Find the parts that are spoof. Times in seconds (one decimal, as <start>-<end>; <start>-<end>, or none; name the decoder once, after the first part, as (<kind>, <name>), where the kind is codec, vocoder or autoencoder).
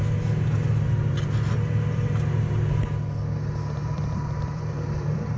3.8-5.4 (vocoder, BigVGAN v2)